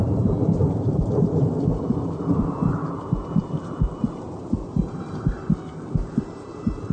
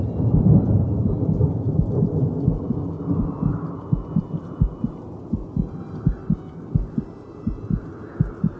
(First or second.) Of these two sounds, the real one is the second